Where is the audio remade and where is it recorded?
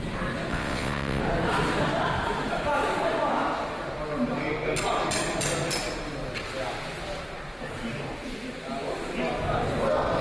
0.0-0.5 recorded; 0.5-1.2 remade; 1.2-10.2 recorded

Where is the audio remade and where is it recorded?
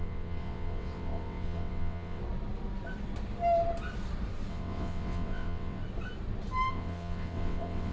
0.0-2.2 remade; 2.2-4.5 recorded; 4.5-5.8 remade; 5.8-6.7 recorded; 6.7-7.9 remade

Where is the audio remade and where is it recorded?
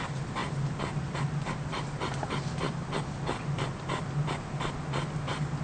0.0-5.6 recorded